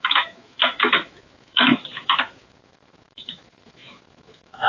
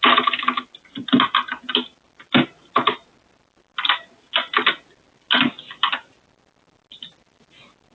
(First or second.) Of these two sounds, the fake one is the first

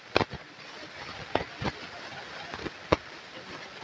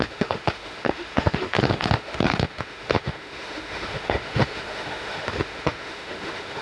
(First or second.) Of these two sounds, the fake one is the second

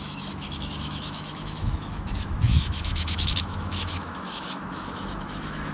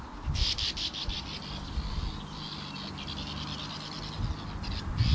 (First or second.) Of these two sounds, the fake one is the first